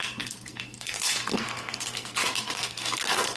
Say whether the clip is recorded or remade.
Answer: remade